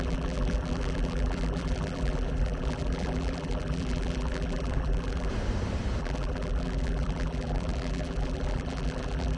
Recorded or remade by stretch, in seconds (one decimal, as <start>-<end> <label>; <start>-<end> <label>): 0.0-5.3 remade; 5.3-6.0 recorded; 6.0-9.4 remade